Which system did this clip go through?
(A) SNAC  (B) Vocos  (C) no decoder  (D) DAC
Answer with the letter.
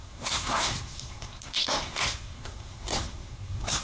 A